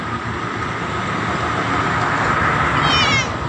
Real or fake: real